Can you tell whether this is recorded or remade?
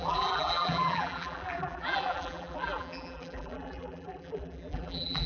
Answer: remade